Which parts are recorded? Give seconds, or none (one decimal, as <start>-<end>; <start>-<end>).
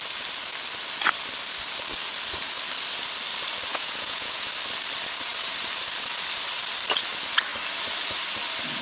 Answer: 0.0-3.7; 4.5-8.8